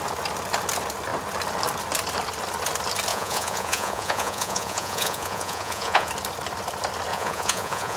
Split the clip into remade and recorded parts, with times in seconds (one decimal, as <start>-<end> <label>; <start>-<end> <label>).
0.0-3.1 recorded; 3.1-6.1 remade; 6.1-7.1 recorded; 7.1-8.0 remade